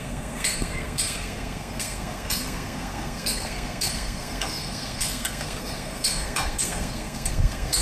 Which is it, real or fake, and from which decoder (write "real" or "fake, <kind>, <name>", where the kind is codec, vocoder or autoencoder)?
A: fake, codec, SNAC